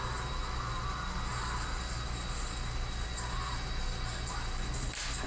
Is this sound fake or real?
real